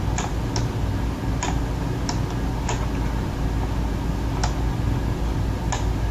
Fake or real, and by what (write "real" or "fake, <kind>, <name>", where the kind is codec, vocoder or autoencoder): real